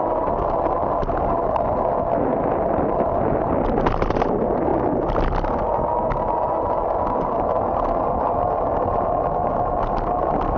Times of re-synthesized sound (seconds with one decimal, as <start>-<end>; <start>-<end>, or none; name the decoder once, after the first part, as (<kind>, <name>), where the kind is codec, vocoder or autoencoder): none